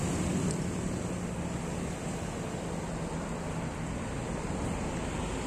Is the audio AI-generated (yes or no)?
no